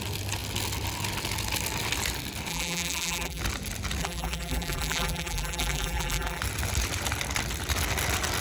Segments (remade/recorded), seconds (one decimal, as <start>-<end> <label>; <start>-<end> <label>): 0.0-2.5 recorded; 2.5-3.4 remade; 3.4-4.0 recorded; 4.0-6.4 remade; 6.4-8.4 recorded